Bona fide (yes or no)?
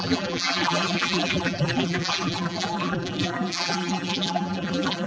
no